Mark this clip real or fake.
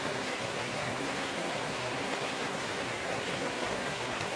fake